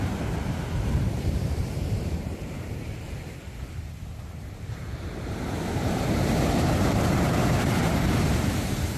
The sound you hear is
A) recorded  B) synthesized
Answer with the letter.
B